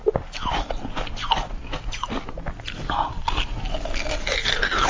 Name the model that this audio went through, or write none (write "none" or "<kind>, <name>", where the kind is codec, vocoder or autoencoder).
none